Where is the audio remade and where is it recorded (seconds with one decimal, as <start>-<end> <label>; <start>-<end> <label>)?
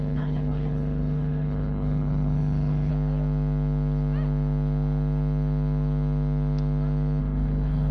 0.0-2.9 remade; 2.9-7.2 recorded; 7.2-7.9 remade